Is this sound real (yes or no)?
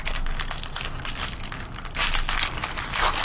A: yes